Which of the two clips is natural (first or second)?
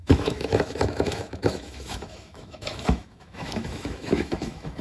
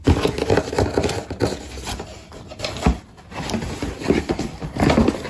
second